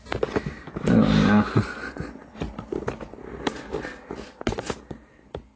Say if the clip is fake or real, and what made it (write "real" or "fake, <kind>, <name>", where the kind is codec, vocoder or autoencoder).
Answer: real